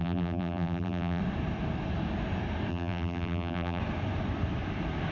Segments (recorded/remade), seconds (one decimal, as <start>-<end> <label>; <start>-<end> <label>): 0.0-1.2 remade; 1.2-2.7 recorded; 2.7-3.8 remade; 3.8-5.1 recorded